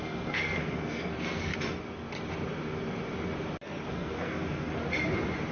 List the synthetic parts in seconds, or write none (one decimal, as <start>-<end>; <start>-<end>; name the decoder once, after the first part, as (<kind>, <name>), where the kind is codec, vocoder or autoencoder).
0.0-1.5 (codec, SNAC); 3.9-4.7